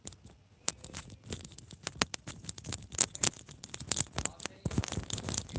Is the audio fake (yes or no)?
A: no